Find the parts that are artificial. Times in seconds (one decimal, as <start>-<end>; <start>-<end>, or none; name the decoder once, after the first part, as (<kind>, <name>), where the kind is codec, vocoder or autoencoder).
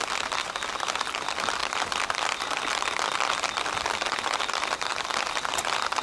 none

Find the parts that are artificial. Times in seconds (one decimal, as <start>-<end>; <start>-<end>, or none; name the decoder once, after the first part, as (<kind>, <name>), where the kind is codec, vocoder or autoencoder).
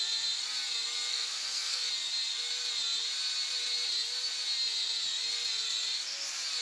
1.1-1.9 (codec, SNAC)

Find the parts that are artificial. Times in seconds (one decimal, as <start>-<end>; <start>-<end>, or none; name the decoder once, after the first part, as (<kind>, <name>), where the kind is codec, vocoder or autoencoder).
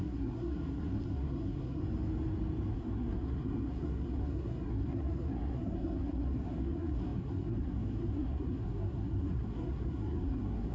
0.0-1.8 (codec, SNAC); 2.7-10.7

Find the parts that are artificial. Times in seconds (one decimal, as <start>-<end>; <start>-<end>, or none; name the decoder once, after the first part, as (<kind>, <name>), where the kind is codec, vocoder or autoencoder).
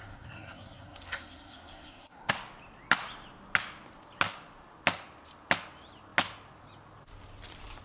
0.0-2.3 (codec, SNAC)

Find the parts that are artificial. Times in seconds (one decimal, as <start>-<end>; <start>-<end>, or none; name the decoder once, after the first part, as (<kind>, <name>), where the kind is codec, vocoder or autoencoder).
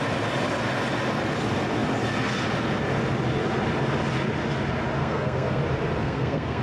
5.0-5.6 (codec, SNAC); 6.0-6.6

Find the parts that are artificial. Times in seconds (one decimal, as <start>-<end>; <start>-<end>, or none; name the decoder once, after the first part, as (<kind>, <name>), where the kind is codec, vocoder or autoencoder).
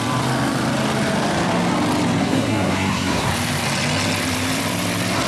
2.2-3.3 (codec, SNAC)